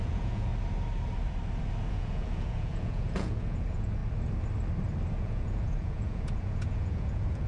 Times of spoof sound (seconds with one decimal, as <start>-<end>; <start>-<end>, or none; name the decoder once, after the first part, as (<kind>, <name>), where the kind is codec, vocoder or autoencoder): 0.0-0.5 (vocoder, Vocos); 1.9-4.0; 5.2-7.5